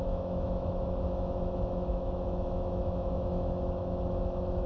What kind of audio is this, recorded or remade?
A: remade